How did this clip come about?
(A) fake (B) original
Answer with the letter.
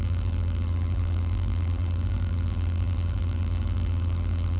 A